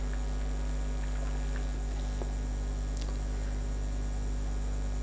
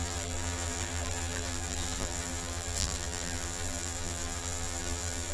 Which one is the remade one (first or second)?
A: second